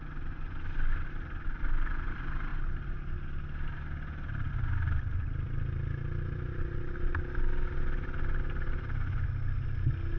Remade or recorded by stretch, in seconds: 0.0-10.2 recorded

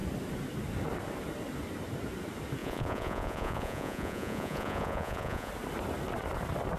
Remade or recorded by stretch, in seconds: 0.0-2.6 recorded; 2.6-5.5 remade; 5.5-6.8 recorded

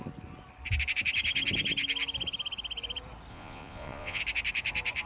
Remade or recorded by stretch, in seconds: 0.0-3.3 recorded; 3.3-4.2 remade; 4.2-5.1 recorded